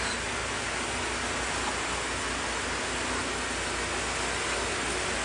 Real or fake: real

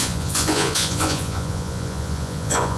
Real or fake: fake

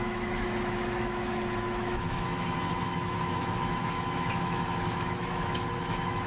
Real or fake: fake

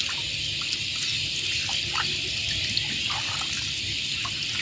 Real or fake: real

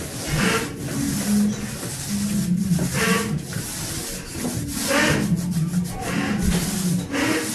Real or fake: real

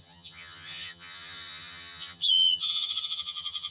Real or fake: fake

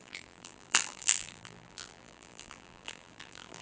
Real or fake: fake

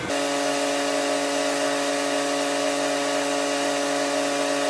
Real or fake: real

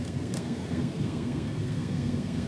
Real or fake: fake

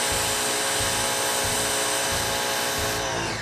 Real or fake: real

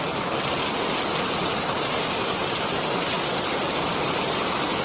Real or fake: real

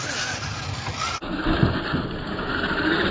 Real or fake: real